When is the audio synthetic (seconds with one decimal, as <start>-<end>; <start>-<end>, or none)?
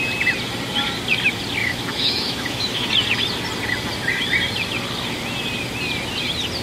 1.6-2.9